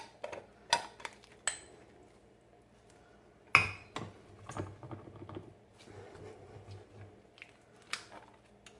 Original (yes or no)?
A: yes